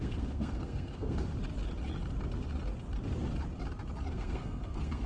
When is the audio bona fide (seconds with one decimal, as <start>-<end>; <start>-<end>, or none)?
1.3-4.1